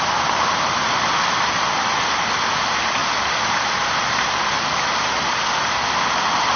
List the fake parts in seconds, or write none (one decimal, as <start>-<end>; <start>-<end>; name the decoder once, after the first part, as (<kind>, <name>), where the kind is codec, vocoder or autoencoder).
0.0-6.6 (vocoder, BigVGAN v2)